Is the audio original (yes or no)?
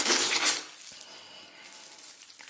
yes